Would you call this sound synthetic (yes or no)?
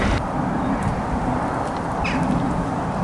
no